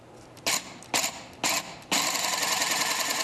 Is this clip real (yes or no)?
yes